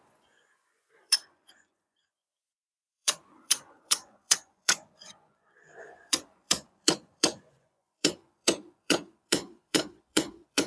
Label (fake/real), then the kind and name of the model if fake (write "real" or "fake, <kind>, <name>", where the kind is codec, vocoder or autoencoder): fake, vocoder, Vocos